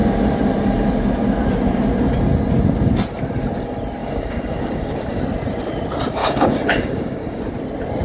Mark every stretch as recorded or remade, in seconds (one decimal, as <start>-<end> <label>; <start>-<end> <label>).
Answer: 0.0-4.0 recorded; 4.0-5.2 remade; 5.2-6.2 recorded; 6.2-7.4 remade; 7.4-8.0 recorded